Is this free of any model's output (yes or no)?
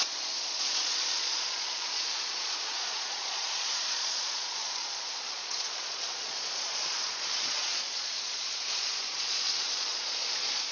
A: no